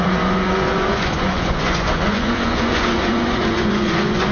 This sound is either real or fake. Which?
fake